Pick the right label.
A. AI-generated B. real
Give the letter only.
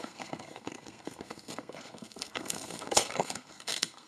A